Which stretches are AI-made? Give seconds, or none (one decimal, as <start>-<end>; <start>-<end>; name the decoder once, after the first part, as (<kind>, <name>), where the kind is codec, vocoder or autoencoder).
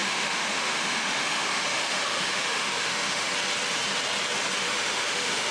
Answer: 0.0-3.3 (autoencoder, DAC-VAE); 4.6-5.5